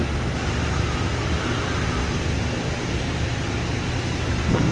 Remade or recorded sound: recorded